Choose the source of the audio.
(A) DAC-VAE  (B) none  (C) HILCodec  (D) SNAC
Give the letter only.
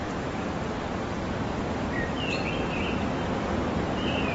B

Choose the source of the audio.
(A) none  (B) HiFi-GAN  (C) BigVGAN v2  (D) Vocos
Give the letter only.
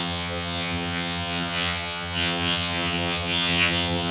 B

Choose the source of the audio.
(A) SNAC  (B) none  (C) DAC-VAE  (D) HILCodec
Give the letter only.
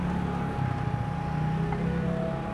B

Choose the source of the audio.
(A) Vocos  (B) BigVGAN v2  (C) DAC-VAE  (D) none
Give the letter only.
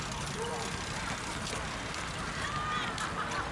D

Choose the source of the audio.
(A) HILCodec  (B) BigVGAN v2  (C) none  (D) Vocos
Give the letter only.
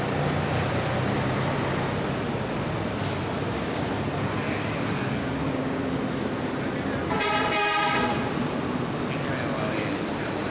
C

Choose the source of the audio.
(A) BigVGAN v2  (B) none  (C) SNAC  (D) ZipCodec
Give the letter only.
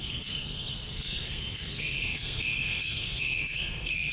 C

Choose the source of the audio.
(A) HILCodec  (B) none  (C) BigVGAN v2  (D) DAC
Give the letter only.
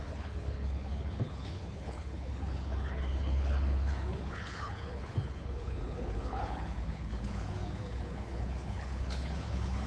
A